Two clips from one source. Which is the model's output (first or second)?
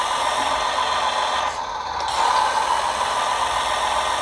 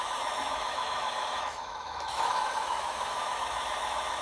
second